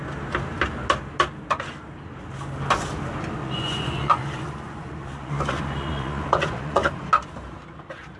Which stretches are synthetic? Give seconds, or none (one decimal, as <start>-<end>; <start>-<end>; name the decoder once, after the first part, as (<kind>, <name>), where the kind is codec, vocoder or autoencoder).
3.4-6.9 (vocoder, Vocos)